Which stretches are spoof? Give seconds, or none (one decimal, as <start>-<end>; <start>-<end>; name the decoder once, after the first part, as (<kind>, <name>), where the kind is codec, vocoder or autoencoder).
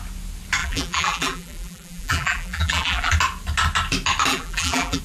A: 0.6-3.1 (vocoder, BigVGAN v2); 4.3-5.0